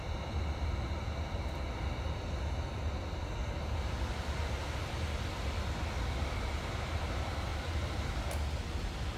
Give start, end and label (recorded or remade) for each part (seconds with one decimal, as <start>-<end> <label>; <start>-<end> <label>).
0.0-9.2 recorded